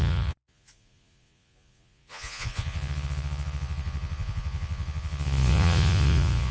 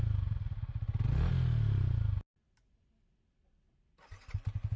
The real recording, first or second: second